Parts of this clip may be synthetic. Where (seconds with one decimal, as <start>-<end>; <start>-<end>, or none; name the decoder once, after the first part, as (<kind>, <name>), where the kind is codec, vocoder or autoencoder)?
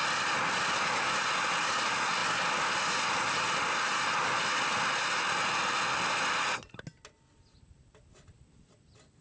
none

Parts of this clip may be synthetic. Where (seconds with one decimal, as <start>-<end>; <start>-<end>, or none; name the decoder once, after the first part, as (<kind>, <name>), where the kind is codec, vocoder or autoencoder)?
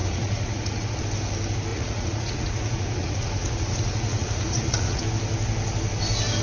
0.0-1.0 (vocoder, Vocos); 1.7-5.0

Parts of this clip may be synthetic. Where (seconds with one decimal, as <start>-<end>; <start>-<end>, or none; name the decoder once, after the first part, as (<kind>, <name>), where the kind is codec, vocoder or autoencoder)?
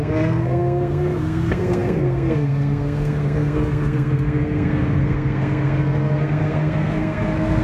0.0-7.6 (codec, SNAC)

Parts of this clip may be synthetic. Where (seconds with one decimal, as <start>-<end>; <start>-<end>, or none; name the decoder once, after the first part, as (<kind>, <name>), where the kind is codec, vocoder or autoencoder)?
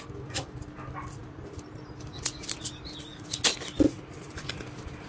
1.2-1.8 (vocoder, BigVGAN v2)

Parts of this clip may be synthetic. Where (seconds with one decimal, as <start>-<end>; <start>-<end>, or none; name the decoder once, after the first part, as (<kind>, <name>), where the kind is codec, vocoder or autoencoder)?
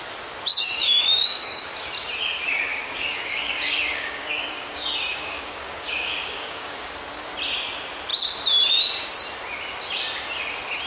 0.5-1.6 (codec, DAC); 2.7-6.9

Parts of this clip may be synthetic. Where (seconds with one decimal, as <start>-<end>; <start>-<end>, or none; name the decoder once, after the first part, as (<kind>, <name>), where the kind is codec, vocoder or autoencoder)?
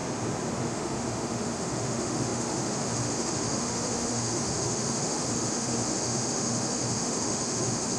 0.6-8.0 (autoencoder, DAC-VAE)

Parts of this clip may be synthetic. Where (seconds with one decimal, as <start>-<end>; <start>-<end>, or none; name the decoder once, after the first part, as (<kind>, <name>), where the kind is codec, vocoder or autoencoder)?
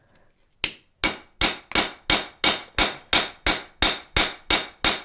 none